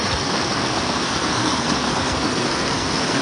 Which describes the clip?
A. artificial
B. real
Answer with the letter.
A